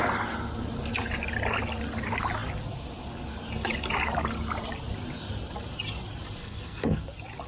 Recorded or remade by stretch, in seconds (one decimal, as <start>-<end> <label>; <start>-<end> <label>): 0.0-6.4 recorded; 6.4-7.0 remade; 7.0-7.5 recorded